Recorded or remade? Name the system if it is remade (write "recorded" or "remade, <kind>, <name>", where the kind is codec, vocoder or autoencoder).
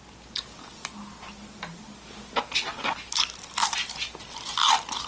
recorded